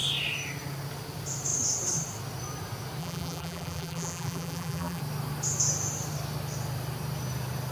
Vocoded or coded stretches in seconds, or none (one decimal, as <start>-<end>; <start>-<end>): 3.0-5.0

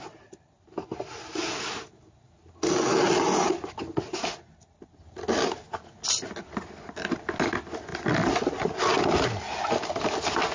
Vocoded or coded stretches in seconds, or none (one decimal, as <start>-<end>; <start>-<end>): none

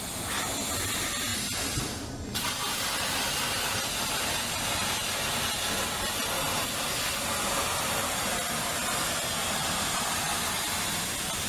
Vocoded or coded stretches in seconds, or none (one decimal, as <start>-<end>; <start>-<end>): 9.4-11.5

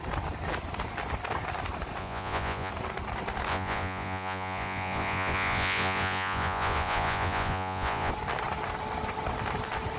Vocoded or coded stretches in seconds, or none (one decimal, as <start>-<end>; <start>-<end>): 2.0-2.7; 3.5-8.1